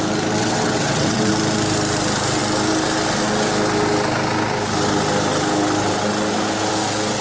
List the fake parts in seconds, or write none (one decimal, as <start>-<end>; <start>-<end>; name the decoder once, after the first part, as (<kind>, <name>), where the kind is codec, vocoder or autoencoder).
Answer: 0.4-1.3 (vocoder, WaveNeXt)